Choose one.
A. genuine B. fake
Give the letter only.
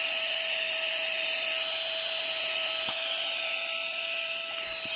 A